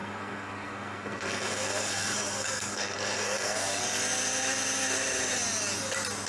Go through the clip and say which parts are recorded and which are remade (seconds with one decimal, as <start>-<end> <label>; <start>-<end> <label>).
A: 0.0-3.8 remade; 3.8-6.3 recorded